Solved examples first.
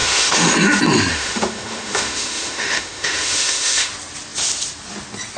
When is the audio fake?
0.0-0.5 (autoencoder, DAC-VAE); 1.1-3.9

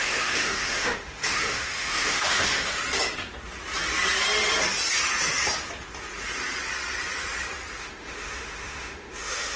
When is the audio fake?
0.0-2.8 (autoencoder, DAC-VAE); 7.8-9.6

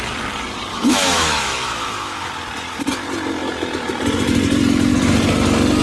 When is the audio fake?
0.7-2.3 (autoencoder, DAC-VAE)

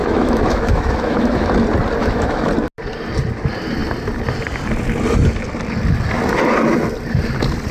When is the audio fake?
0.0-1.5 (autoencoder, DAC-VAE); 2.0-2.5

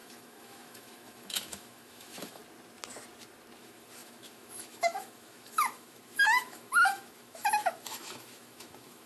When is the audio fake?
0.0-2.4 (autoencoder, DAC-VAE); 3.6-9.1

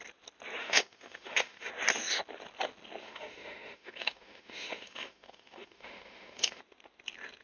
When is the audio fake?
0.6-1.7 (autoencoder, DAC-VAE); 3.0-6.6